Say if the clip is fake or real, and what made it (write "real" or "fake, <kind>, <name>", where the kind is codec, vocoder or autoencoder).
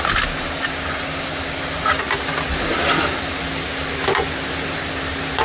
real